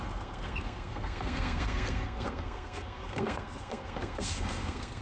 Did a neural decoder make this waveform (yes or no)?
yes